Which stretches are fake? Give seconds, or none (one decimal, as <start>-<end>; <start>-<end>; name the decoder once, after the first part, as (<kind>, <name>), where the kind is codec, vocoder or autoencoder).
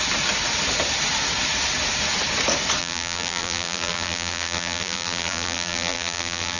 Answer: 2.8-6.6 (vocoder, BigVGAN v2)